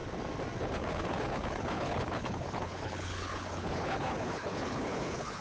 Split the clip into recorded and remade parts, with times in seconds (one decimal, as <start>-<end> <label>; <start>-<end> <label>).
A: 0.0-0.6 recorded; 0.6-5.4 remade